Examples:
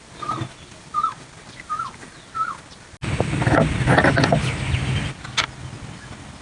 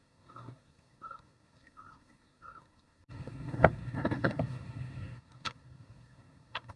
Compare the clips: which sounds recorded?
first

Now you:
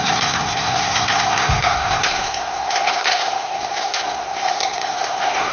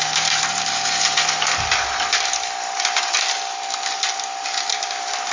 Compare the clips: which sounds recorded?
second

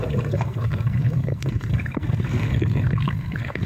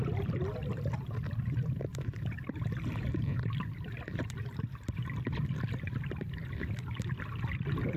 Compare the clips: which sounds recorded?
second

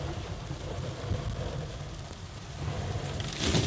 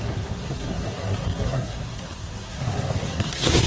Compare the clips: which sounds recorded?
first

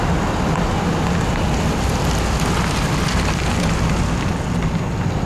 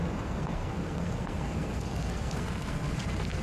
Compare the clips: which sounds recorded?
first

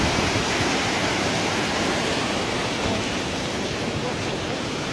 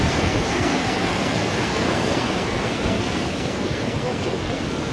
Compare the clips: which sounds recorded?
first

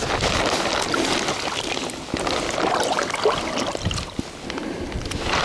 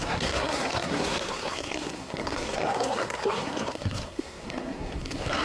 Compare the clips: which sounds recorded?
first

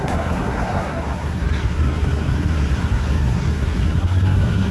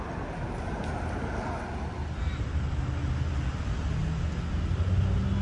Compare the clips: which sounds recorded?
second